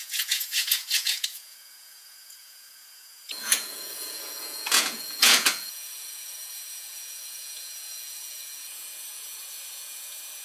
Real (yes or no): no